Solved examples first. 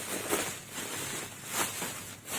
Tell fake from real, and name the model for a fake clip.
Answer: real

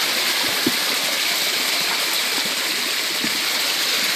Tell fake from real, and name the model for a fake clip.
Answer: real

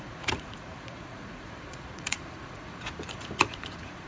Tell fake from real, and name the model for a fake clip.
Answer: fake, vocoder, Vocos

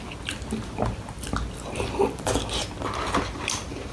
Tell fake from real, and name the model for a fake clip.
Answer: real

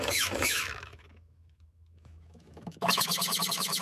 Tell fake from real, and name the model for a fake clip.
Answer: fake, autoencoder, DAC-VAE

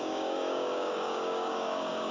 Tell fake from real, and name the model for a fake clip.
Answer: fake, codec, DAC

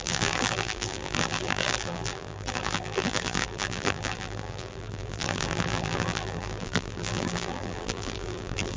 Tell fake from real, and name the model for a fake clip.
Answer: fake, vocoder, BigVGAN v2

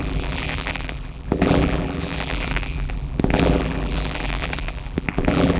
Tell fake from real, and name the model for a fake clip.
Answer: fake, vocoder, BigVGAN v2